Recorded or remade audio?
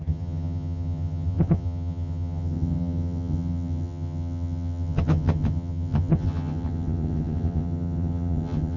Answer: remade